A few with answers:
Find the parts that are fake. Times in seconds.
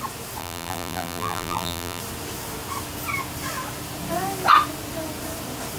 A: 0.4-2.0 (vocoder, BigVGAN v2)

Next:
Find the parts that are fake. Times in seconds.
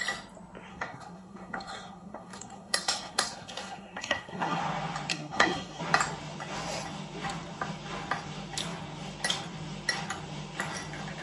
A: 0.7-4.6 (codec, SNAC); 5.1-5.8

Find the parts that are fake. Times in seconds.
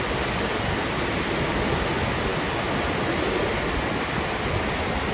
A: none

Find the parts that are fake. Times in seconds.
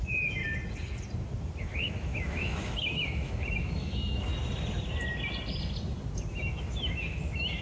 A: 0.0-0.4 (autoencoder, DAC-VAE); 1.6-4.3; 6.3-7.6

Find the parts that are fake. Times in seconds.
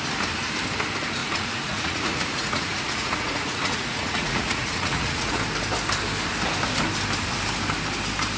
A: 1.2-5.4 (vocoder, Vocos)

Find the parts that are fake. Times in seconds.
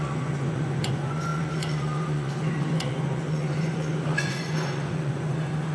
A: 0.0-5.7 (vocoder, Vocos)